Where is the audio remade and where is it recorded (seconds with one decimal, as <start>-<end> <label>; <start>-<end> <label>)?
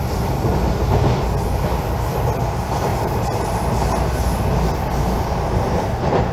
0.0-2.9 recorded; 2.9-3.6 remade; 3.6-6.3 recorded